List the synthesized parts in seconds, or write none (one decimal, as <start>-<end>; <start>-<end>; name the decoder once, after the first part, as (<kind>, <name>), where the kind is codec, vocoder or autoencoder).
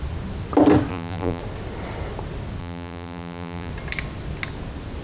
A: 0.9-1.4 (vocoder, BigVGAN v2); 2.6-3.7